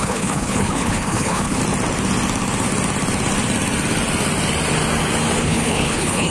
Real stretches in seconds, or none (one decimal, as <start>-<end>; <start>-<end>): 1.6-5.4